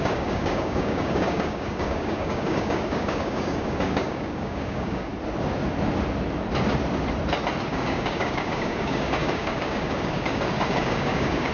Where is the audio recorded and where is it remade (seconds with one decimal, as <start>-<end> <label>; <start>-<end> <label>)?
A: 0.0-5.1 remade; 5.1-7.7 recorded; 7.7-11.5 remade